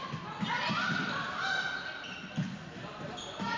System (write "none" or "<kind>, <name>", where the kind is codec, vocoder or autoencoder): none